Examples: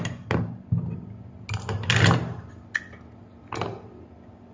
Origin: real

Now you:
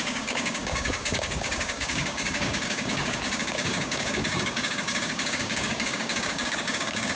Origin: fake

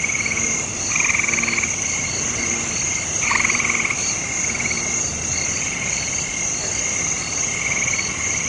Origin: real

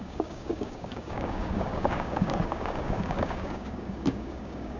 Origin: fake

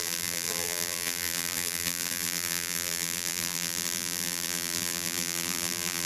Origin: fake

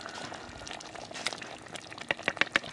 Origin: real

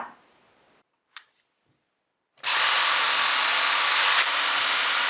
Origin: real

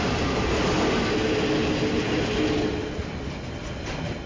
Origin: real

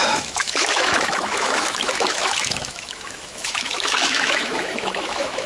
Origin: fake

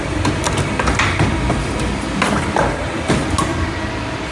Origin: fake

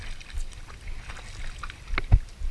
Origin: real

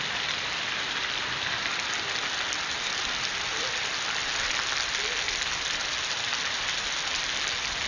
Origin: real